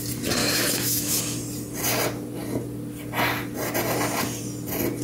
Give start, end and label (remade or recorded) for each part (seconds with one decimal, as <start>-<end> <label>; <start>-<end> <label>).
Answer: 0.0-0.4 recorded; 0.4-1.2 remade; 1.2-5.0 recorded